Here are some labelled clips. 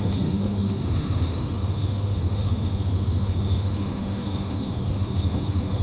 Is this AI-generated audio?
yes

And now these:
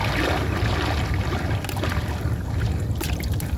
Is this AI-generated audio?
no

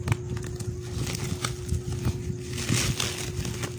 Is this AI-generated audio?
no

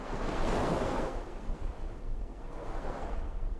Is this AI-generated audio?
yes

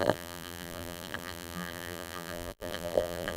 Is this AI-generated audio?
yes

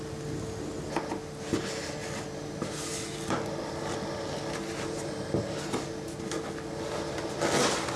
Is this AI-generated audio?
no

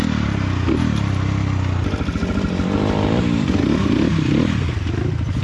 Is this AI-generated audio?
no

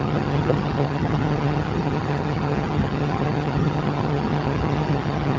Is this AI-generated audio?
yes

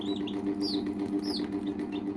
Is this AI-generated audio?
no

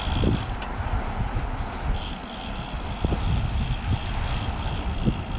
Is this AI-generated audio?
no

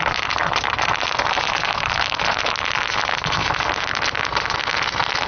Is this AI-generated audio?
no